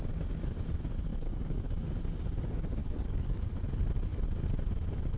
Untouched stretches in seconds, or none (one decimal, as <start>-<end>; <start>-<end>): 0.0-1.1; 1.6-2.8; 3.5-5.2